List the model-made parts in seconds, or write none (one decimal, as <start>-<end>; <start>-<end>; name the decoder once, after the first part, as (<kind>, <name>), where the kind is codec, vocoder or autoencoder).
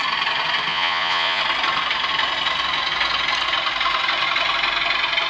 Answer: 0.7-1.4 (vocoder, Vocos)